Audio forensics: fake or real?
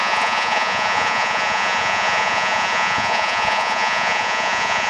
fake